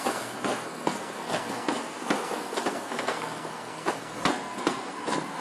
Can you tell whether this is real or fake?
fake